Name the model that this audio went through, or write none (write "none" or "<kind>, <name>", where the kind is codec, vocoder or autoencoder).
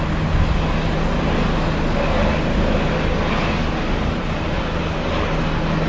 none